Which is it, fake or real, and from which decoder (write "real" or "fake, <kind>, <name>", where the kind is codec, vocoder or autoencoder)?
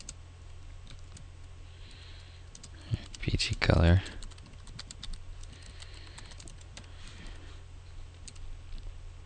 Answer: real